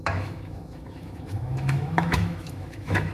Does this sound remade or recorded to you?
remade